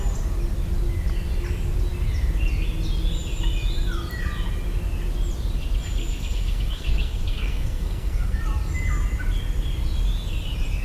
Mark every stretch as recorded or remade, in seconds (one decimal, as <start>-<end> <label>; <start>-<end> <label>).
0.0-6.0 recorded; 6.0-8.4 remade; 8.4-10.8 recorded